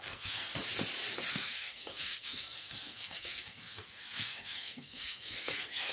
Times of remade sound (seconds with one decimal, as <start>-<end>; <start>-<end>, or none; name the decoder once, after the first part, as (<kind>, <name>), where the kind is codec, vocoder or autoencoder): 0.0-0.5 (codec, SNAC); 1.3-5.9